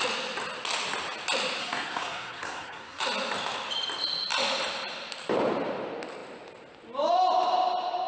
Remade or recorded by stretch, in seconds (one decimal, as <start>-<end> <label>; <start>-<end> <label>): 0.0-1.6 recorded; 1.6-3.0 remade; 3.0-8.1 recorded